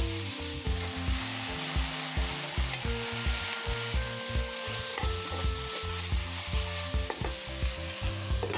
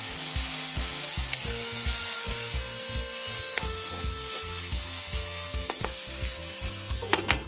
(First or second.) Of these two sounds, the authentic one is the first